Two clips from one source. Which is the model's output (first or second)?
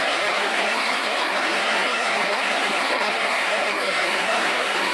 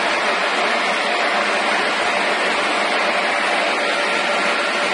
first